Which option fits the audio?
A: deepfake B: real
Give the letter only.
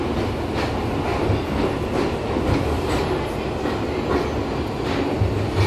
B